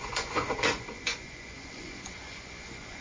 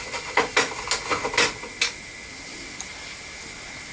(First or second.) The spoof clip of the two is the first